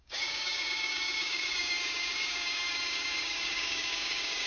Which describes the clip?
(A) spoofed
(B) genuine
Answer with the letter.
A